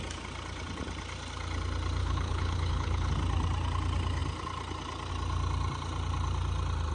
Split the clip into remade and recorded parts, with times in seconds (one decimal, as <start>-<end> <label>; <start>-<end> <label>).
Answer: 0.0-2.0 recorded; 2.0-3.1 remade; 3.1-6.9 recorded